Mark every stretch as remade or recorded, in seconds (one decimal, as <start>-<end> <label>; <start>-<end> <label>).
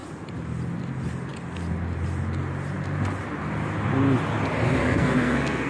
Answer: 0.0-4.8 recorded; 4.8-5.7 remade